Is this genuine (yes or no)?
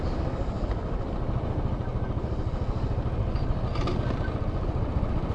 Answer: yes